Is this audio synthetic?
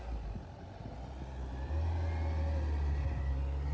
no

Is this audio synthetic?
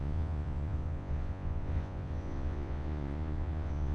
yes